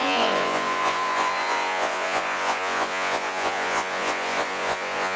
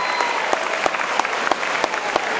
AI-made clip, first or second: first